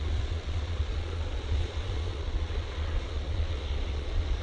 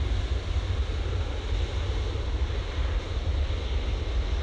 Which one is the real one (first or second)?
second